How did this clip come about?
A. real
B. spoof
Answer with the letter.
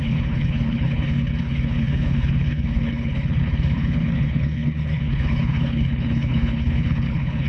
B